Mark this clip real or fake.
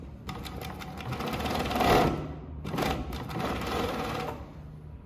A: real